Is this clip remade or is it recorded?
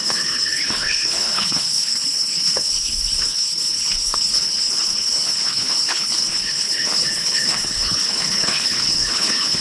remade